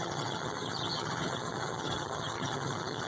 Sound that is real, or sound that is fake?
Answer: fake